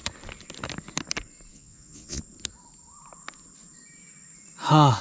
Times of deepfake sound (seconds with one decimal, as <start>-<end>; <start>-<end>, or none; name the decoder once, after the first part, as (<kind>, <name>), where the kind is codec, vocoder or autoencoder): 1.5-2.2 (vocoder, Vocos)